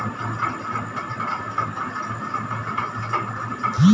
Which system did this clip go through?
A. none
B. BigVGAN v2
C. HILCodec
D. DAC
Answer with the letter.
A